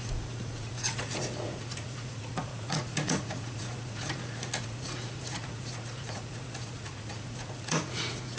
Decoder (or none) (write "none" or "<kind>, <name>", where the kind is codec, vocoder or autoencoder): vocoder, Vocos